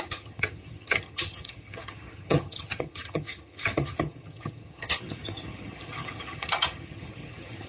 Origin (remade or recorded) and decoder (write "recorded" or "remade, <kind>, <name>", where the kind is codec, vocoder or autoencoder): remade, vocoder, HiFi-GAN